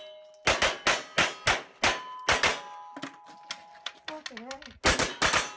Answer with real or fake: real